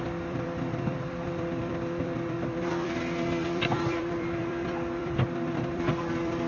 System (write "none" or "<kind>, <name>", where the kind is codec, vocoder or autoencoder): vocoder, BigVGAN v2